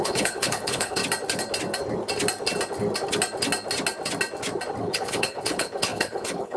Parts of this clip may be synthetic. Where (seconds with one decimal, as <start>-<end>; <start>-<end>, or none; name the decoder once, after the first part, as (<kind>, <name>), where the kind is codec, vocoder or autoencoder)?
0.0-1.0 (codec, HILCodec); 4.8-6.6